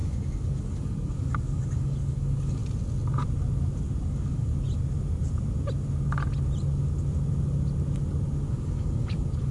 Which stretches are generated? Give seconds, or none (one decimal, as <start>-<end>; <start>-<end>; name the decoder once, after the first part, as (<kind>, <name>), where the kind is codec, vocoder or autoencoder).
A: 0.0-2.6 (codec, DAC); 4.1-4.5; 8.5-9.5